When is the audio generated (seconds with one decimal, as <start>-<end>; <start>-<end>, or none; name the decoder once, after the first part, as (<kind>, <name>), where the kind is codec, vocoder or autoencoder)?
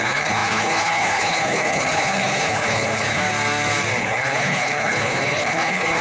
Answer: 0.0-3.2 (codec, HILCodec); 4.0-6.0